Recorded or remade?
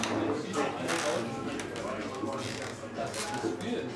recorded